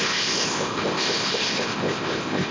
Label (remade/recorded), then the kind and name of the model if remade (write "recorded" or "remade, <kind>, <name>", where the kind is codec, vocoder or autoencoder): remade, codec, ZipCodec